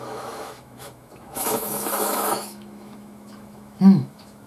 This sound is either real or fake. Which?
fake